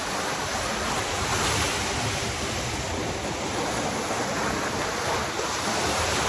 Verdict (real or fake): real